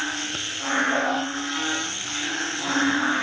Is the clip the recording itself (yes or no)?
no